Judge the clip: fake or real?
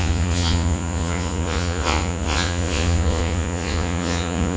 fake